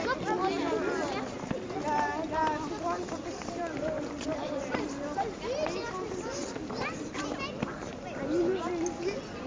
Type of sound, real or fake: real